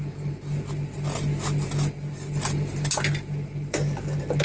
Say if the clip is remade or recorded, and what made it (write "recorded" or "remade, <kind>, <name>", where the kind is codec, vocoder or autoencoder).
recorded